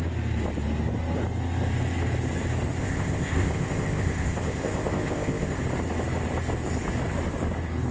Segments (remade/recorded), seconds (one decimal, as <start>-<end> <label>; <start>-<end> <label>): 0.0-2.8 recorded; 2.8-5.6 remade; 5.6-7.9 recorded